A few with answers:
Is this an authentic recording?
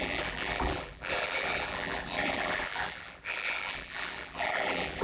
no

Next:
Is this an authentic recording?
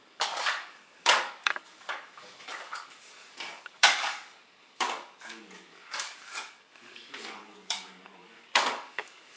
no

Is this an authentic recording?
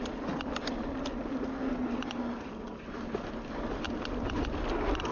yes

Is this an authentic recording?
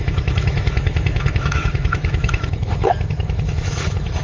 no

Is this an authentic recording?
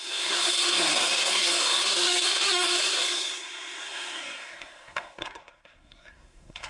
no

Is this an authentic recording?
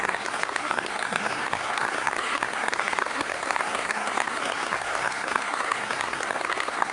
no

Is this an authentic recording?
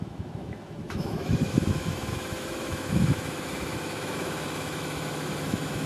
no